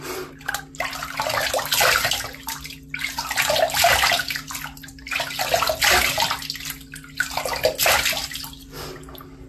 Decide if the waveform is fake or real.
real